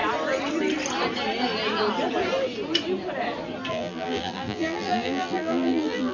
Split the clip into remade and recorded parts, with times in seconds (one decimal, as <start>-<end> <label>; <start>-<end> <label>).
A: 0.0-3.7 recorded; 3.7-6.1 remade